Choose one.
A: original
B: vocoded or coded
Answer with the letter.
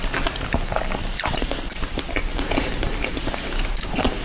A